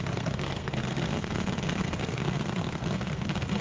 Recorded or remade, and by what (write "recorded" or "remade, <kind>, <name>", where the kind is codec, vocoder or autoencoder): remade, codec, SNAC